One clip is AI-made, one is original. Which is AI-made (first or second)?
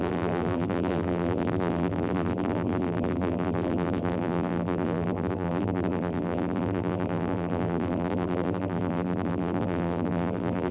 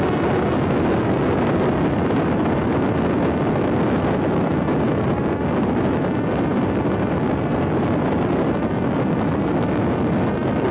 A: first